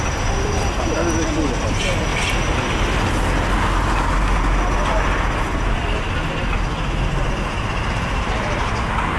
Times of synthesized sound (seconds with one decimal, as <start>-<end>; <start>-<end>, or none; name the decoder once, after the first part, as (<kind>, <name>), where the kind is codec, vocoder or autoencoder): none